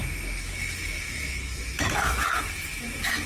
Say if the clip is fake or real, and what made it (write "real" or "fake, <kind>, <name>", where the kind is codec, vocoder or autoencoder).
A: fake, autoencoder, DAC-VAE